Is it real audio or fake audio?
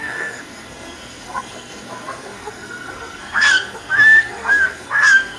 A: fake